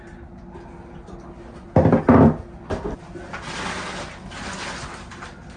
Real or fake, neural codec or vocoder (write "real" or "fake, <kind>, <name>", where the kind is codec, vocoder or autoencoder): real